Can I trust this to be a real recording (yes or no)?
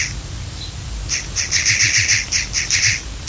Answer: yes